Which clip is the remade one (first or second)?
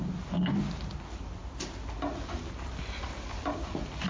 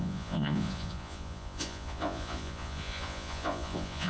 second